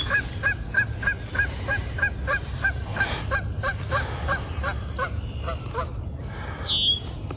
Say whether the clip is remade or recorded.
recorded